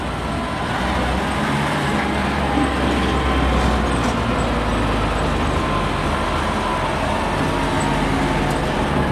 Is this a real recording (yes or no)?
yes